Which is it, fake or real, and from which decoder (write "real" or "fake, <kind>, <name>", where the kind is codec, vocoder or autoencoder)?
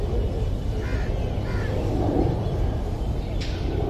real